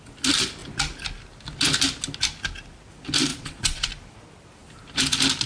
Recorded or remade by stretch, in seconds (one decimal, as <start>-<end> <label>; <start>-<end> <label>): 0.0-3.3 recorded; 3.3-3.9 remade; 3.9-5.5 recorded